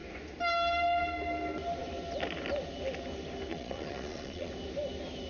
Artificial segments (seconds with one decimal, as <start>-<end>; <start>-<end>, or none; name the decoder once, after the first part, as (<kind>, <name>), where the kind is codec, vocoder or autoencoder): 3.5-4.5 (vocoder, Vocos)